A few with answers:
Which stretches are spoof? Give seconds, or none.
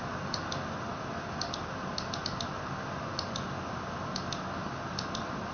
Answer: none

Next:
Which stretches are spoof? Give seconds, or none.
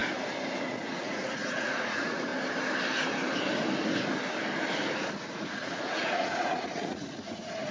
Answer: 0.6-2.3 (vocoder, Vocos); 5.1-7.7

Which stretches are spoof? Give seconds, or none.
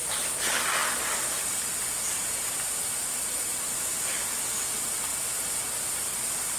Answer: none